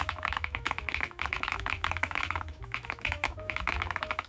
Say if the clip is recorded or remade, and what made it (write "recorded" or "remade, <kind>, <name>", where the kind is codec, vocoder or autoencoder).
remade, autoencoder, DAC-VAE